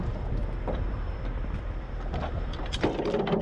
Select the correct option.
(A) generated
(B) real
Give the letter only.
A